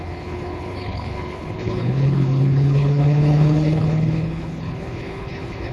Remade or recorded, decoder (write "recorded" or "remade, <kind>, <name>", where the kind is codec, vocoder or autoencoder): remade, codec, HILCodec